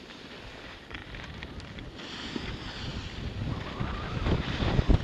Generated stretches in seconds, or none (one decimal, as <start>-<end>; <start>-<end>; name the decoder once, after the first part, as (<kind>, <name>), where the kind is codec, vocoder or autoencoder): none